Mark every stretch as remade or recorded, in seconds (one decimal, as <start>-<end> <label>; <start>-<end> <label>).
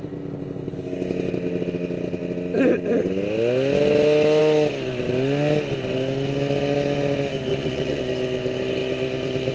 0.0-7.5 recorded; 7.5-8.0 remade; 8.0-9.5 recorded